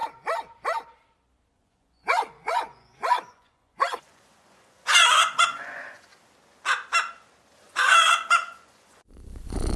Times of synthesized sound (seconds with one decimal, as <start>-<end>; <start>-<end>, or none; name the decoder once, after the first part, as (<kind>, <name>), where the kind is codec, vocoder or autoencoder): 1.6-6.1 (vocoder, Vocos); 7.6-9.8